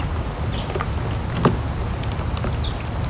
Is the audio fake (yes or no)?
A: no